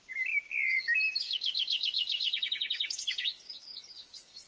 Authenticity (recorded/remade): remade